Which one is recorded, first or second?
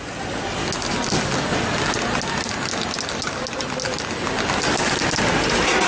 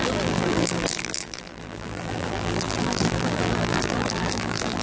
first